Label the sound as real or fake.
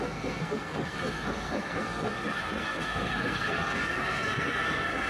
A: fake